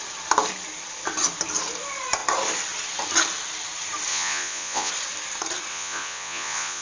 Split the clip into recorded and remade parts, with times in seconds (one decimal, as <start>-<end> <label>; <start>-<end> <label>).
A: 0.0-4.1 recorded; 4.1-4.9 remade; 4.9-5.7 recorded; 5.7-6.8 remade